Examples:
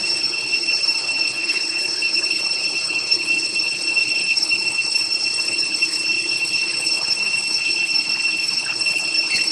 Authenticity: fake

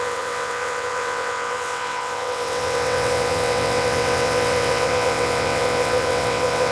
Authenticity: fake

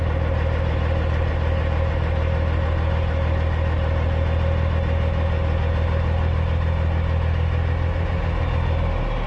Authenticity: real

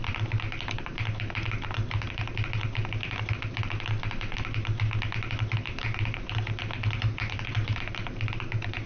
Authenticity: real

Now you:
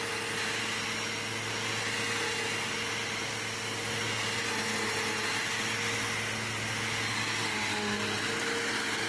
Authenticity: real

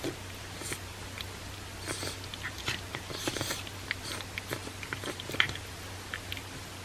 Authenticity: real